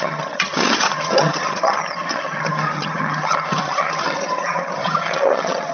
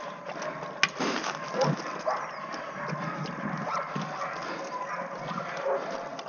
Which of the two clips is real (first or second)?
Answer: second